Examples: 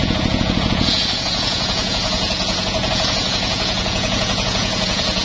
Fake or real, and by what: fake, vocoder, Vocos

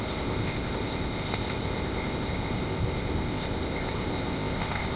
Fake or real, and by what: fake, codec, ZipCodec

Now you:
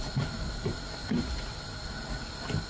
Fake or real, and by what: real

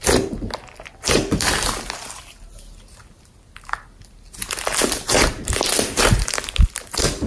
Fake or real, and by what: real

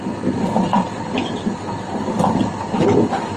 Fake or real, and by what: real